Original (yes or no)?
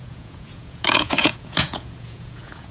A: no